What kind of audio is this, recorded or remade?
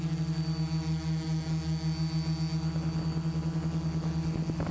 recorded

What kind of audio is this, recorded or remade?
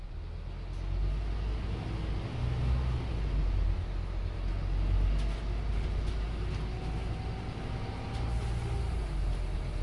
recorded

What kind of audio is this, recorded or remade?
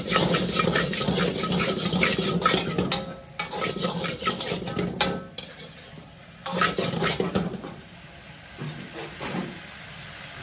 recorded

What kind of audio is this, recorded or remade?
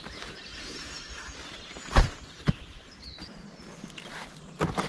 recorded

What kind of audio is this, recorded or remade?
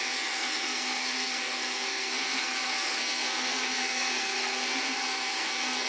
remade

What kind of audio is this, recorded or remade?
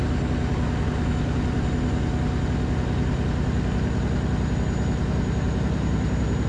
recorded